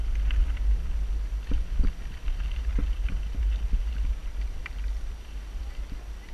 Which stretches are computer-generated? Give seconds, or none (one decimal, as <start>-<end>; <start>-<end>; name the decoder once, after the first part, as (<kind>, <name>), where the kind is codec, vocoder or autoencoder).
none